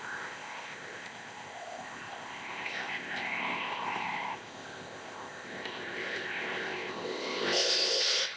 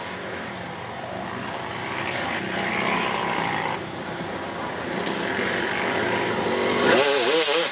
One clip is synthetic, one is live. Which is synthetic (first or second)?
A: first